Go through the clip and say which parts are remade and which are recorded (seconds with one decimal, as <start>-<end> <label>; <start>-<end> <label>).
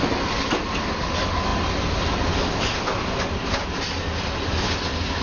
0.0-5.2 recorded